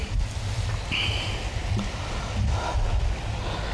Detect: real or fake real